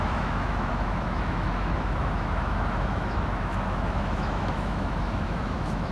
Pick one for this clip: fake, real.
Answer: fake